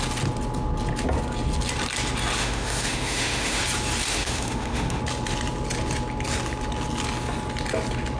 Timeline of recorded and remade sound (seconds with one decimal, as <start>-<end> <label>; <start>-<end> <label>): 0.0-2.4 recorded; 2.4-3.6 remade; 3.6-4.1 recorded; 4.1-5.0 remade; 5.0-8.2 recorded